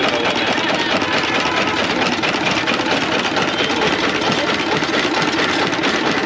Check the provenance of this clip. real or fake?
real